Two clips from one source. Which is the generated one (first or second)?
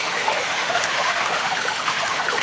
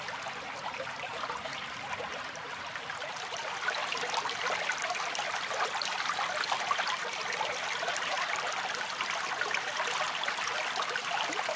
first